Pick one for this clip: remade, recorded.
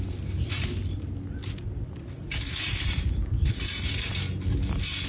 recorded